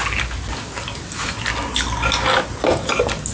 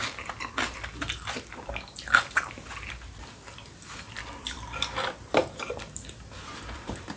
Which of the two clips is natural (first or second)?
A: first